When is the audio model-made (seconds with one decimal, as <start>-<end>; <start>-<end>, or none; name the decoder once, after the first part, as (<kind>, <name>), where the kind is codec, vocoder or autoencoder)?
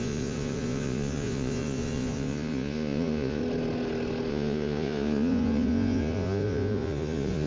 0.0-3.4 (vocoder, Vocos); 4.3-7.5